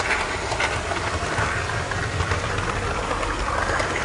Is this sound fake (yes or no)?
no